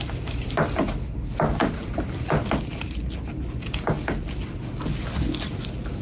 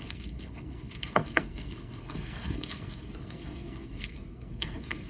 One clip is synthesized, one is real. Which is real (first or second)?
first